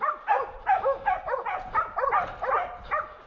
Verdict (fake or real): real